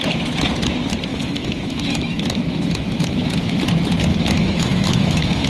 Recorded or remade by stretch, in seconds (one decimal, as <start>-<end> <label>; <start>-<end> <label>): 0.0-1.1 recorded; 1.1-3.6 remade; 3.6-4.1 recorded; 4.1-5.5 remade